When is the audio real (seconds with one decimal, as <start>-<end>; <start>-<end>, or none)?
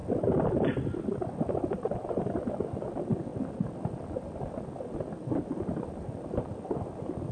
0.0-7.3